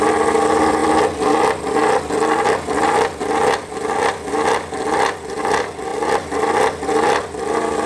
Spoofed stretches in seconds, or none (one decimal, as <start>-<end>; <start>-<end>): 0.0-5.9; 7.5-7.9